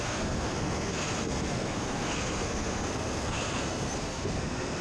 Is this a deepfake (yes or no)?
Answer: yes